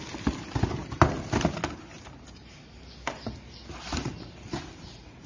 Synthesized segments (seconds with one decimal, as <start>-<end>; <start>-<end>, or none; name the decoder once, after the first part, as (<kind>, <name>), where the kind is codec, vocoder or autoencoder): none